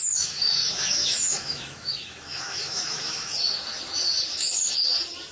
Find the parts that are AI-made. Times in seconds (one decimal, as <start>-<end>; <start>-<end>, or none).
0.0-3.3